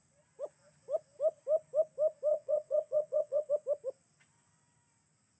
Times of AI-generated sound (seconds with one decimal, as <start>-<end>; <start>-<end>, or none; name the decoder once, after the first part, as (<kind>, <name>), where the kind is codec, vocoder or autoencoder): 2.3-3.5 (vocoder, WaveNeXt)